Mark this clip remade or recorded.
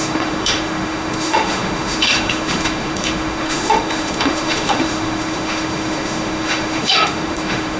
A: remade